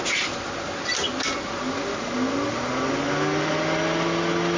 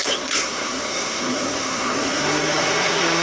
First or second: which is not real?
second